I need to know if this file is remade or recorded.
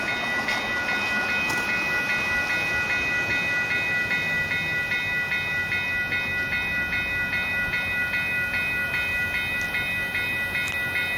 recorded